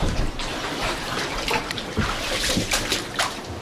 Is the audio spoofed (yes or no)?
yes